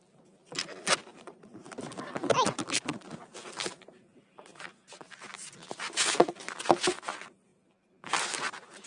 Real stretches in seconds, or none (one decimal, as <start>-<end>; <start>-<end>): 0.0-1.1; 2.0-8.9